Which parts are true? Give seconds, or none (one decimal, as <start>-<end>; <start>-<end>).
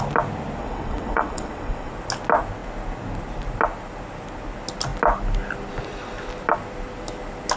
0.0-0.6; 1.9-7.6